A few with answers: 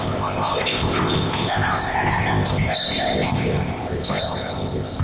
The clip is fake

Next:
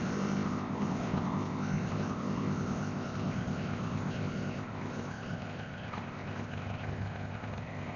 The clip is fake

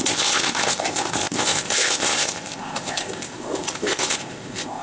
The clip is fake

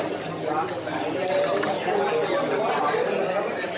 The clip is real